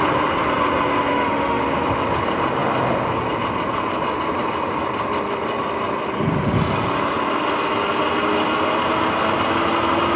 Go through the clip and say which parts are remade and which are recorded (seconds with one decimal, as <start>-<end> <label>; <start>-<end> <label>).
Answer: 0.0-1.1 recorded; 1.1-1.6 remade; 1.6-10.2 recorded

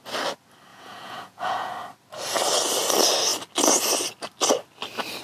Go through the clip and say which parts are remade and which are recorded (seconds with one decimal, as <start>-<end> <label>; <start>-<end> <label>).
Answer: 0.0-0.7 recorded; 0.7-1.7 remade; 1.7-5.2 recorded